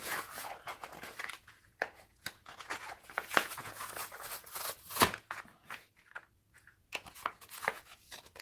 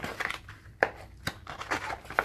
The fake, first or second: first